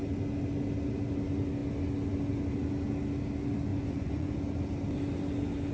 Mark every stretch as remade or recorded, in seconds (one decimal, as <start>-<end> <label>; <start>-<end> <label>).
0.0-3.7 recorded; 3.7-4.3 remade; 4.3-5.7 recorded